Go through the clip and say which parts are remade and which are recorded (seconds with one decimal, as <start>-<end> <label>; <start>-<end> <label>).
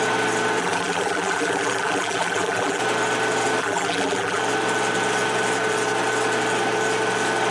0.0-0.6 recorded; 0.6-2.8 remade; 2.8-3.6 recorded; 3.6-4.4 remade; 4.4-7.5 recorded